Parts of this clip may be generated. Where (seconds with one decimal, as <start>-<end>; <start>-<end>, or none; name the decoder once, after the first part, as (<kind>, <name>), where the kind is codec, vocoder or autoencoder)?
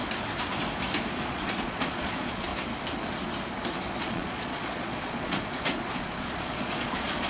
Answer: 1.1-2.5 (vocoder, Vocos); 4.0-7.3